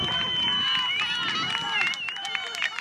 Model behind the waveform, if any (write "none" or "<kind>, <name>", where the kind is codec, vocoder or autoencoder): none